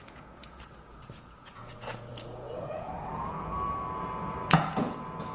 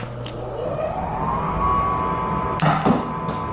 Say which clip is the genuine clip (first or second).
second